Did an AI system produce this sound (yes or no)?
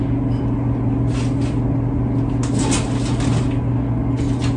no